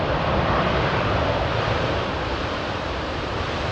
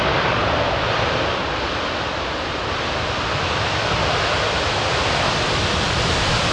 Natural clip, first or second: second